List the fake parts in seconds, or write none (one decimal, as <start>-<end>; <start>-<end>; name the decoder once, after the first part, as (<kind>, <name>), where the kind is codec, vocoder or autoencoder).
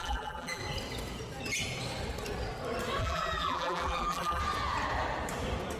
0.0-0.6 (vocoder, BigVGAN v2); 3.0-4.4